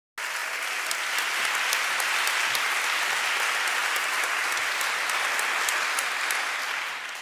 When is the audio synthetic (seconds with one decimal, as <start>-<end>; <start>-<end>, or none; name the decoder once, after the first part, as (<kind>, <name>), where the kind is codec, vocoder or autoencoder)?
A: none